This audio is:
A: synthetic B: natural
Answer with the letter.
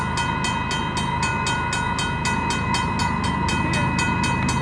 B